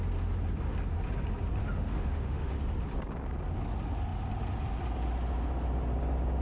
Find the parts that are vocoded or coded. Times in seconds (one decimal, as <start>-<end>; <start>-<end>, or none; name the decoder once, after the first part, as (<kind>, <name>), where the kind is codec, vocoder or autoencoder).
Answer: 1.6-2.5 (autoencoder, DAC-VAE)